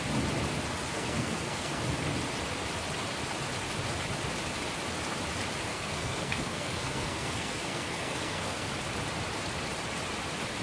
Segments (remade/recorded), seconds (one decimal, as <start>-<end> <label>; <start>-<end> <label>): 0.0-0.9 recorded; 0.9-1.8 remade; 1.8-5.7 recorded; 5.7-8.7 remade; 8.7-10.6 recorded